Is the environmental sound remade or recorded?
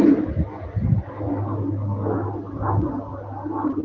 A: recorded